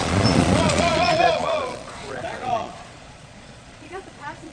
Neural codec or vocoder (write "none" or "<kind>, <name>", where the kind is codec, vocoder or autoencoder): vocoder, Vocos